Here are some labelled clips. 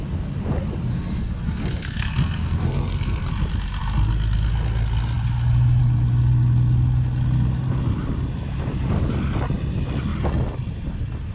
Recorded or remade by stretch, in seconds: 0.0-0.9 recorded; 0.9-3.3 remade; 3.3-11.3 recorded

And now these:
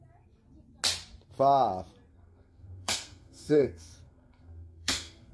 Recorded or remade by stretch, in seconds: 0.0-2.1 recorded; 2.1-5.3 remade